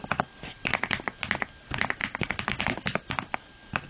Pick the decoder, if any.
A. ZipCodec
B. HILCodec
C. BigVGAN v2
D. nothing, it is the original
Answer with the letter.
D